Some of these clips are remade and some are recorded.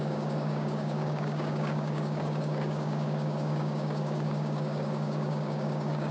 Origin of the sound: remade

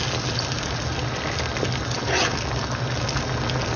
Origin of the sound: recorded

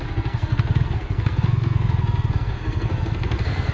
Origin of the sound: remade